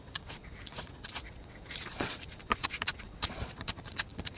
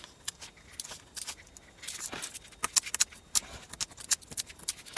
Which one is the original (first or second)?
second